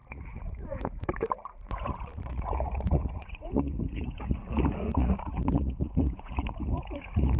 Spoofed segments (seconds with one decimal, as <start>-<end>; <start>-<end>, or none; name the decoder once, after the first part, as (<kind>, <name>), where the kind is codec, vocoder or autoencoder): 0.0-7.4 (vocoder, Vocos)